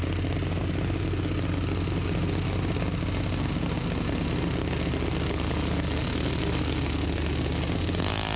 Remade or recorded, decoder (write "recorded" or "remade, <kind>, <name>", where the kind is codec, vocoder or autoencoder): recorded